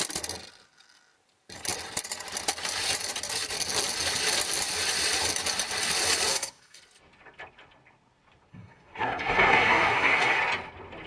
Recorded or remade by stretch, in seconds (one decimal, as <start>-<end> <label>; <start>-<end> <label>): 0.0-6.3 recorded; 6.3-6.8 remade; 6.8-8.5 recorded; 8.5-10.4 remade; 10.4-11.1 recorded